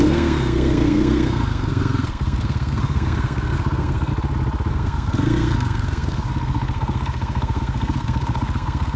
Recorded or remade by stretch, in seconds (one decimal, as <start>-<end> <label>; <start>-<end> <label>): 0.0-4.1 remade; 4.1-4.7 recorded; 4.7-9.0 remade